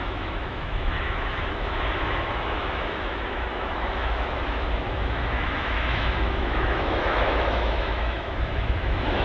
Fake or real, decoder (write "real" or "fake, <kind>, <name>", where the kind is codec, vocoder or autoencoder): fake, autoencoder, DAC-VAE